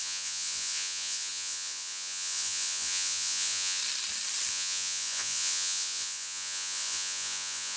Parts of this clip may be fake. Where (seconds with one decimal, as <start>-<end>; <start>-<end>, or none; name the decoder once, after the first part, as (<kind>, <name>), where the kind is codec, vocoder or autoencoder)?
0.0-3.8 (vocoder, Vocos); 4.5-7.8